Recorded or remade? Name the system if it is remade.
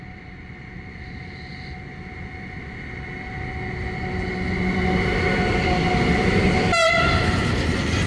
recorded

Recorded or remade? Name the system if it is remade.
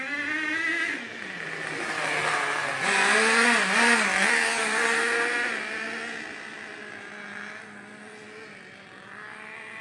recorded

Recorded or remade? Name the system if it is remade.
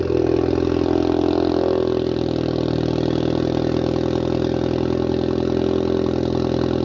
recorded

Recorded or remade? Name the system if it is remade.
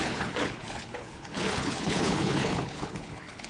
remade, codec, HILCodec